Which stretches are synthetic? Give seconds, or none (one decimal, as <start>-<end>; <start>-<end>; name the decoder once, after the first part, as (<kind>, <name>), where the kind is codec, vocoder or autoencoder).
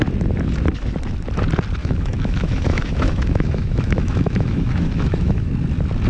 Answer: 1.8-5.5 (autoencoder, DAC-VAE)